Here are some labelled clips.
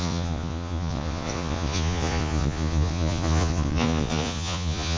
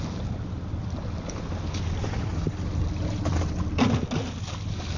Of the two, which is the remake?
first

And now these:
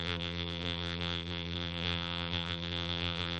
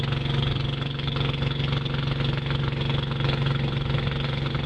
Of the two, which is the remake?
first